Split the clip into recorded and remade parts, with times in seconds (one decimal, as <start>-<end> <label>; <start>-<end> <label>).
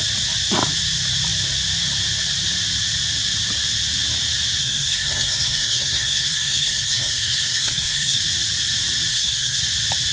0.0-4.6 recorded; 4.6-8.2 remade; 8.2-9.1 recorded; 9.1-9.6 remade; 9.6-10.1 recorded